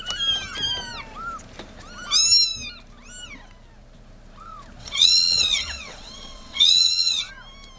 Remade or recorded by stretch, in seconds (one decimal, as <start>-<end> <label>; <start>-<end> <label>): 0.0-4.8 recorded; 4.8-7.3 remade; 7.3-7.8 recorded